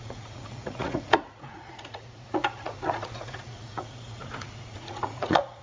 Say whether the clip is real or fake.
fake